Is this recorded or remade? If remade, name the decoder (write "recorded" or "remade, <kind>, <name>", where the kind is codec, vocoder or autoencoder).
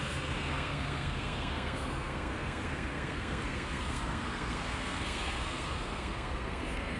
remade, codec, SNAC